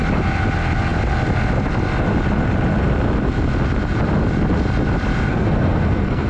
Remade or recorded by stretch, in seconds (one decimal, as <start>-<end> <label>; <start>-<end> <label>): 0.0-5.3 recorded; 5.3-6.3 remade

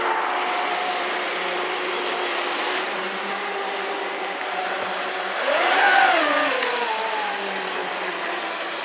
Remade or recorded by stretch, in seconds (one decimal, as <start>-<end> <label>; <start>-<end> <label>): 0.0-2.3 recorded; 2.3-6.0 remade; 6.0-7.8 recorded; 7.8-8.8 remade